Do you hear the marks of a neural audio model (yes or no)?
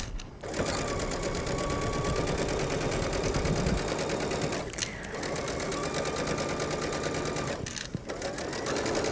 no